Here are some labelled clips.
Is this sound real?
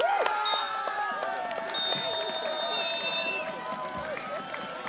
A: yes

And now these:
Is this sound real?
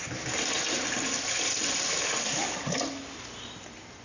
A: yes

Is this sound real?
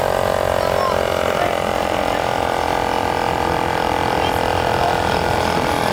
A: yes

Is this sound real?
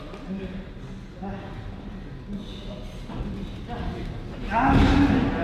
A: yes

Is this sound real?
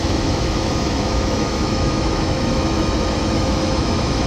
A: no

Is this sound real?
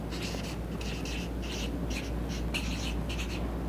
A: yes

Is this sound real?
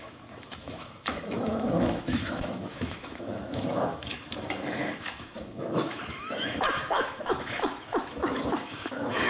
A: no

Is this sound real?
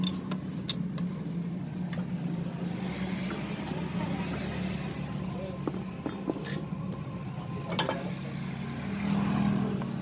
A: yes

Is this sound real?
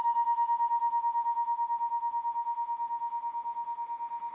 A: no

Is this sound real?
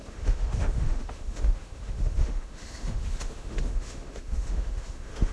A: no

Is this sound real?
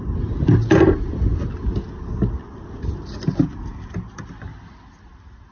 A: yes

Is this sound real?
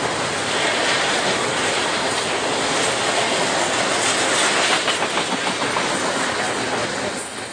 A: yes